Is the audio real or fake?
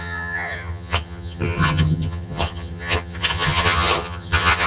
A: fake